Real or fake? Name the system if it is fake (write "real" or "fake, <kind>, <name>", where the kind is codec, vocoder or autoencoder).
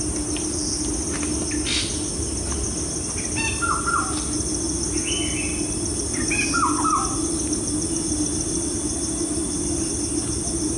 real